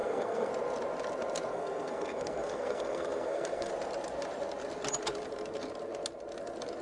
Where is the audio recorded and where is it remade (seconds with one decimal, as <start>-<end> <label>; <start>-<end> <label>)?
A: 0.0-0.5 remade; 0.5-1.5 recorded; 1.5-3.7 remade; 3.7-6.8 recorded